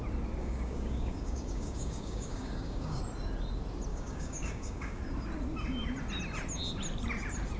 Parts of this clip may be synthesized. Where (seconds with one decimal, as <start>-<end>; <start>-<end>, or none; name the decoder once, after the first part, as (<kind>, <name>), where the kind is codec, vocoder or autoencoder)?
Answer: 0.4-3.0 (codec, DAC); 3.9-5.0